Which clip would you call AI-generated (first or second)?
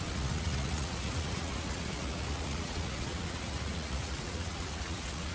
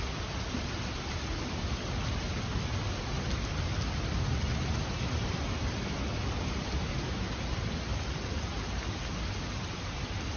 first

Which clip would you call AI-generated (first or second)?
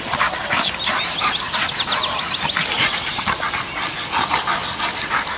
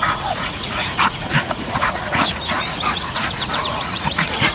second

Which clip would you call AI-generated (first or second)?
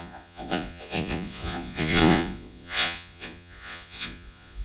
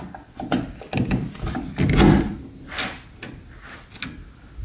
first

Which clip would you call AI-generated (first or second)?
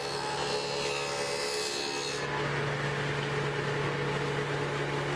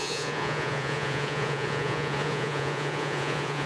second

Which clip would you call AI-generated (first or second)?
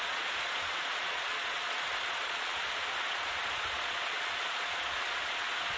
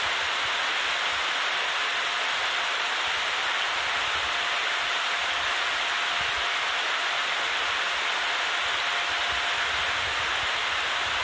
first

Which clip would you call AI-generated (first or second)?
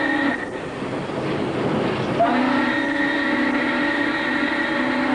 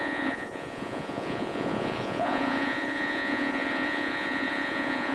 second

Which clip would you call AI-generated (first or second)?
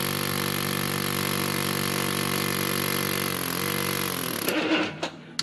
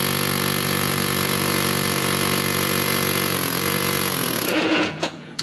second